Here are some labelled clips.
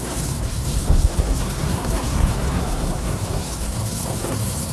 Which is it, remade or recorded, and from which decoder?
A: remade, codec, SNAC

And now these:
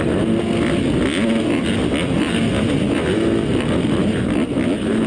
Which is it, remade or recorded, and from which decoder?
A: recorded